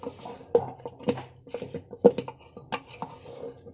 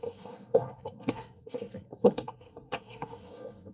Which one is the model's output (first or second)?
second